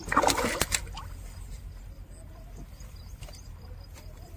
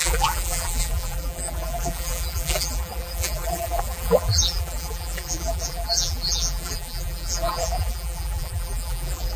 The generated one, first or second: second